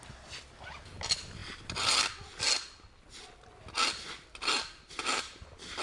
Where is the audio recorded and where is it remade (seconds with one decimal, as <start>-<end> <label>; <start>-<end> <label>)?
0.0-5.8 recorded